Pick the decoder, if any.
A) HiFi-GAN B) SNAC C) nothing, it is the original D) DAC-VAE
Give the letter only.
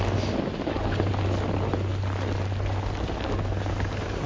C